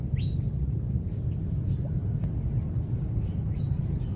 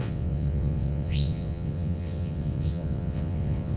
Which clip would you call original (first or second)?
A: first